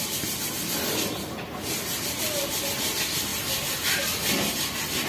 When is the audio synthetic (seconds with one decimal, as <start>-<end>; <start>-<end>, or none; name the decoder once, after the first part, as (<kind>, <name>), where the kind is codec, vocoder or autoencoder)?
none